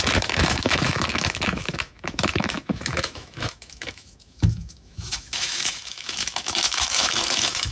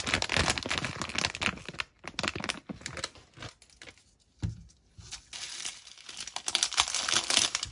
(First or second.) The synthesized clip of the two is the first